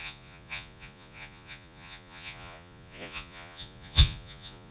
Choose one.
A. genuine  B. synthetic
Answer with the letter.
B